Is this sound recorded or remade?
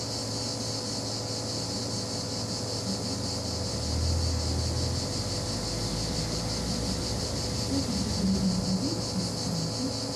recorded